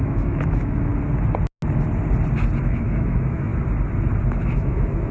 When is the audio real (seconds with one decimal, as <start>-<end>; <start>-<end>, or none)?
0.9-2.6; 3.5-4.3